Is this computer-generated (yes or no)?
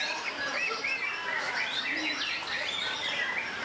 no